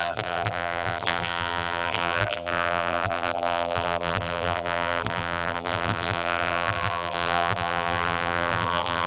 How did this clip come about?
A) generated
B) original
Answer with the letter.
A